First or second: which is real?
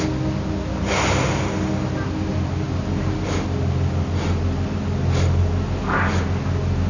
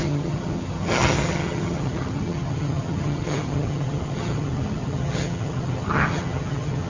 first